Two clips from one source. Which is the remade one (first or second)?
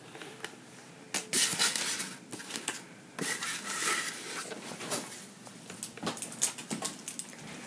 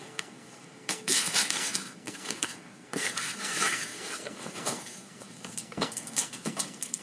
second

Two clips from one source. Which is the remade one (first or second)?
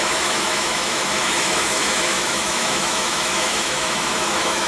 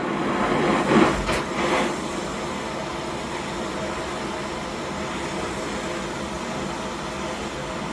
first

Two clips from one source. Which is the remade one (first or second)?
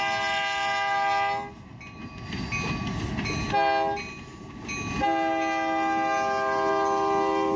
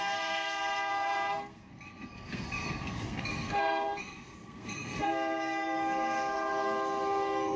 second